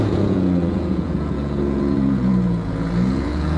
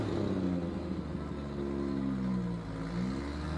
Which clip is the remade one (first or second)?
first